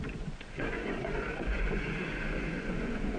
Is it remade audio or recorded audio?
remade